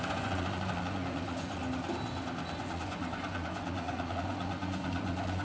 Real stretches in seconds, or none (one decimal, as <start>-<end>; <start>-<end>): 1.6-2.6